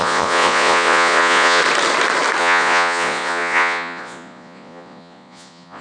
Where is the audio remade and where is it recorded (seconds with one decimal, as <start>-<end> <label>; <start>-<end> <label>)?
0.0-1.6 remade; 1.6-2.4 recorded; 2.4-5.8 remade